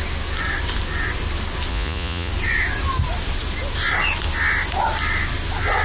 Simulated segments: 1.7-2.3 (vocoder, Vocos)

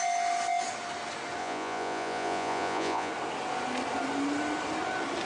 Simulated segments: 1.4-3.1 (vocoder, Vocos)

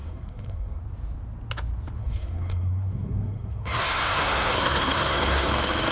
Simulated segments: 0.0-0.8 (codec, SNAC); 2.0-5.5

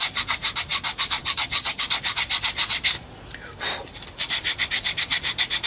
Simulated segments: 1.2-1.8 (vocoder, HiFi-GAN)

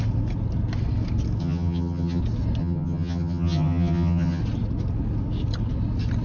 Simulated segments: 1.4-2.2 (vocoder, HiFi-GAN); 2.6-4.4

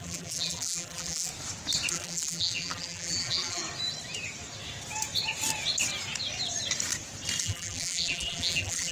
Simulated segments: 0.0-1.3 (vocoder, BigVGAN v2); 1.9-3.6; 7.4-8.9